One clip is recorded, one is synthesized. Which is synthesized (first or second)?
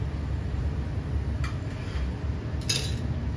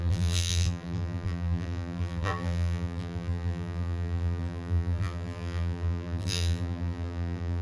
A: second